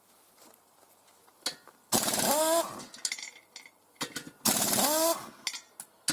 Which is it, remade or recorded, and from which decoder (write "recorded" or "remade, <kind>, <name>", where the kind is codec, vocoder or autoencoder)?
recorded